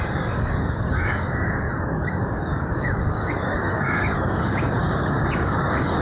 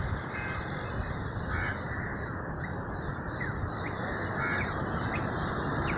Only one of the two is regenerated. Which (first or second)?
first